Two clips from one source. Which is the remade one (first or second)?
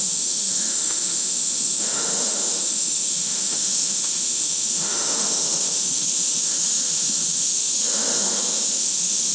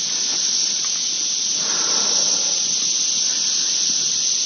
first